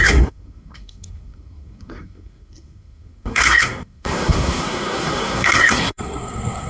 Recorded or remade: remade